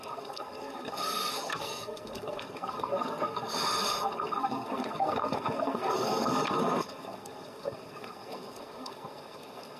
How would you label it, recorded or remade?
remade